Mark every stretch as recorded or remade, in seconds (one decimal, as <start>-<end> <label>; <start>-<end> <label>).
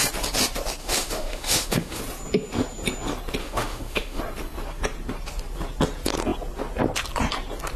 0.0-0.8 recorded; 0.8-2.0 remade; 2.0-3.4 recorded; 3.4-4.2 remade; 4.2-7.8 recorded